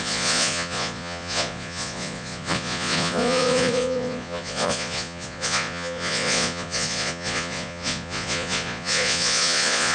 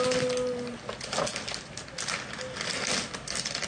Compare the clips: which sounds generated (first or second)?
first